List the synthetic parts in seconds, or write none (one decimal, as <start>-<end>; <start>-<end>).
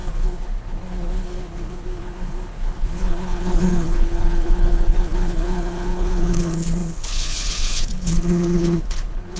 0.0-9.4